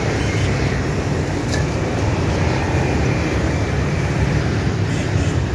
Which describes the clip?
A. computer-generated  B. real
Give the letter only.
A